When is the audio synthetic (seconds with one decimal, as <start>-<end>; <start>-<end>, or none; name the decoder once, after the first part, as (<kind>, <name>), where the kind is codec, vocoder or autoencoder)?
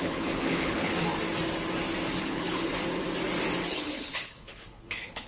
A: 0.0-0.9 (codec, HILCodec); 2.2-2.7; 3.7-5.3